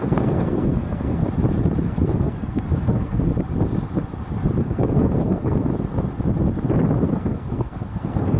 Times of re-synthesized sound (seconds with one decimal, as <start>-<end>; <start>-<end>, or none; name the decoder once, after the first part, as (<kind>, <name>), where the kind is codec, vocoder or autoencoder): 0.0-1.2 (codec, SNAC); 1.8-3.3; 4.6-5.7; 7.0-8.4